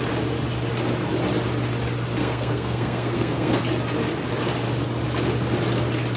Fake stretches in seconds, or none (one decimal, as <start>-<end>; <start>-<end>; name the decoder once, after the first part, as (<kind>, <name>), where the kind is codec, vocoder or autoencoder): 2.2-3.6 (codec, SNAC)